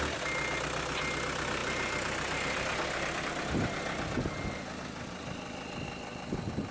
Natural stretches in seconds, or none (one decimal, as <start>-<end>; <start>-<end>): 0.0-1.6; 3.2-6.7